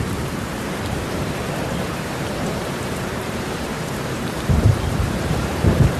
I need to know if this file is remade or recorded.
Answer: remade